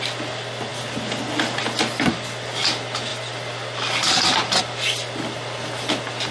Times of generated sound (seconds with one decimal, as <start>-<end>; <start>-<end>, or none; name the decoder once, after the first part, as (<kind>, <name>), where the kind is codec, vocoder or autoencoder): none